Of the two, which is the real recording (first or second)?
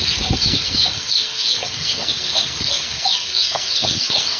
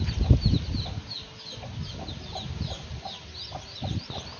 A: second